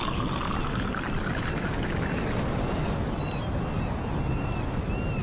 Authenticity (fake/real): real